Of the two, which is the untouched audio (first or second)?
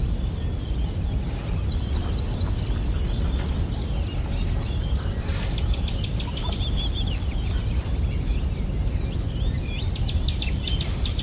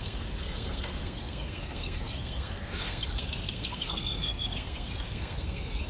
first